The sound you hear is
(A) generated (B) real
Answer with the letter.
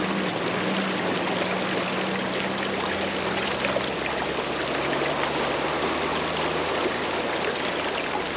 B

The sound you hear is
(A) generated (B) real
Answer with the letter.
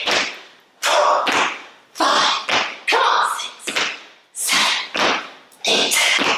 B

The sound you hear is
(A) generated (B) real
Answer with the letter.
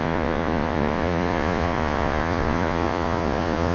A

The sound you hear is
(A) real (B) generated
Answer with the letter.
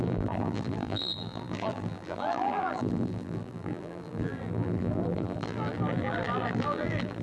B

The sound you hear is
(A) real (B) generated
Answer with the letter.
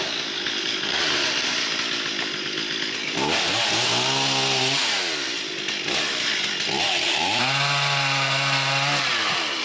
A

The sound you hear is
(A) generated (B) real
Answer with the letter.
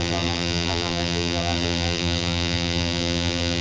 A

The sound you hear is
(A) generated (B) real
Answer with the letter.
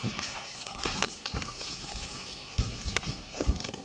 A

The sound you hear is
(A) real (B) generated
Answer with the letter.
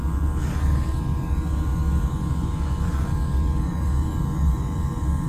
B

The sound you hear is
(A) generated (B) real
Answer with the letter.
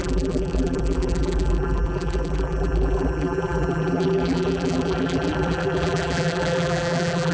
A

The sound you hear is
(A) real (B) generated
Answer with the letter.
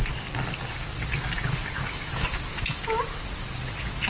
A